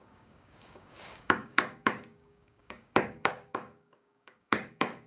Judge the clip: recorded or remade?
remade